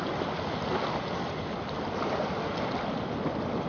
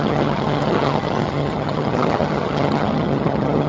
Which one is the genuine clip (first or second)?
first